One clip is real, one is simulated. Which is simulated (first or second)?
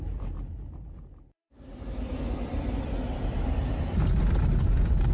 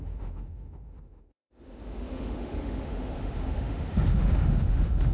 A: second